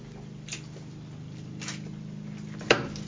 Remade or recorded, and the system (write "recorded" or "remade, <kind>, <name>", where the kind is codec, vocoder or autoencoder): recorded